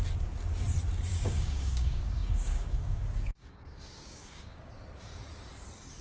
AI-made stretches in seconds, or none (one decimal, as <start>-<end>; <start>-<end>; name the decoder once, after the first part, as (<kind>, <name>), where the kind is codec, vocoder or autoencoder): 1.1-4.7 (codec, DAC)